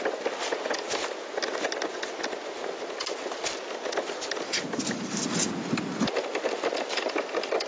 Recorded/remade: recorded